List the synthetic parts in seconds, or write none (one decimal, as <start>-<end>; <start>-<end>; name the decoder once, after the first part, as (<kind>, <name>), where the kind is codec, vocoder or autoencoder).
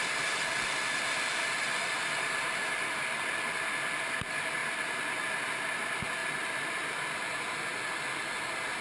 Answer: none